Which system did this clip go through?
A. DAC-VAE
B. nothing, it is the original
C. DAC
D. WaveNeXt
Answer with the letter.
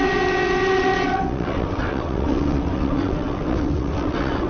D